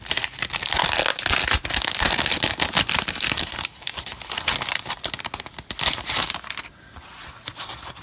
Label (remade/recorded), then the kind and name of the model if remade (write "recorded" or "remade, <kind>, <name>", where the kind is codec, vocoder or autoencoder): recorded